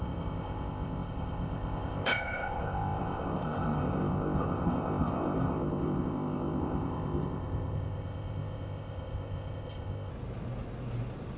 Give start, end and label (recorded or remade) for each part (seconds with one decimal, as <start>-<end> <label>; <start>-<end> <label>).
0.0-10.1 remade; 10.1-11.4 recorded